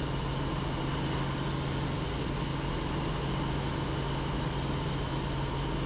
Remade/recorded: recorded